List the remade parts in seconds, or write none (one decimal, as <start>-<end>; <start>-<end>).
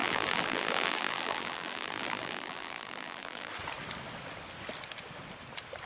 0.0-3.5